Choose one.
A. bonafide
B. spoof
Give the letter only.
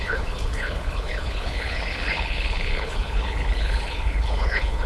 B